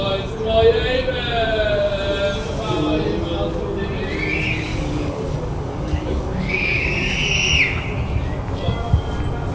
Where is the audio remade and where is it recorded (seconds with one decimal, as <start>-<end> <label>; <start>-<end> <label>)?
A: 0.0-4.7 recorded; 4.7-6.9 remade; 6.9-9.5 recorded